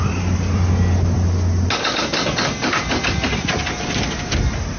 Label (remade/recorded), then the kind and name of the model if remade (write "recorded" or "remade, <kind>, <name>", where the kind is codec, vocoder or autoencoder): recorded